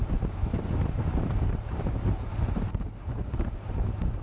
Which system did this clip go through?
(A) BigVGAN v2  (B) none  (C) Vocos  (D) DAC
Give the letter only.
A